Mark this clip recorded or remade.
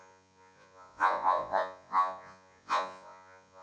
remade